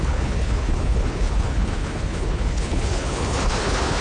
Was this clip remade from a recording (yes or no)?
yes